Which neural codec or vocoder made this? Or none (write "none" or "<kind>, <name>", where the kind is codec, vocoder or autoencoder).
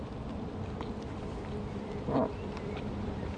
vocoder, BigVGAN v2